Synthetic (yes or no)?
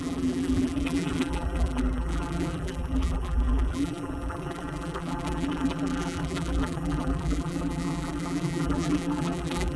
yes